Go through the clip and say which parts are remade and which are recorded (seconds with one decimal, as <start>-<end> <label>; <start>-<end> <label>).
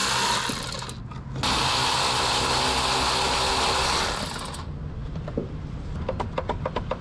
0.0-5.0 recorded; 5.0-6.2 remade; 6.2-7.0 recorded